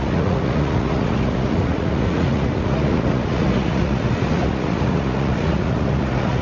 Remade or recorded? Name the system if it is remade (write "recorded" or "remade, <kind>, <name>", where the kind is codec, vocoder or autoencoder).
remade, vocoder, Vocos